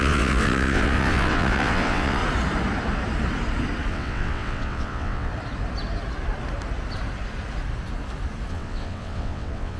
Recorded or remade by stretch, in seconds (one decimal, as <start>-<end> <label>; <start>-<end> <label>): 0.0-2.2 remade; 2.2-3.9 recorded; 3.9-5.3 remade; 5.3-8.5 recorded; 8.5-9.8 remade